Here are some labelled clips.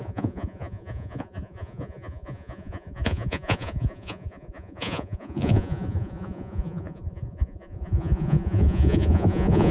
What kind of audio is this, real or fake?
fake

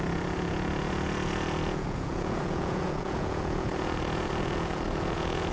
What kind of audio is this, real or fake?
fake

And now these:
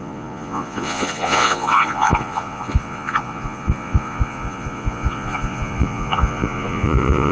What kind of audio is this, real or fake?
fake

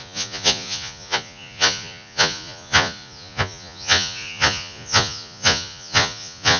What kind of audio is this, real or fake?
fake